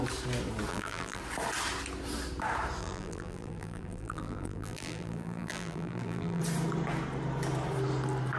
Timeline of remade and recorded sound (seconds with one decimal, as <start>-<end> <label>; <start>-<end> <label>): 0.0-0.7 recorded; 0.7-1.2 remade; 1.2-2.8 recorded; 2.8-6.4 remade; 6.4-8.4 recorded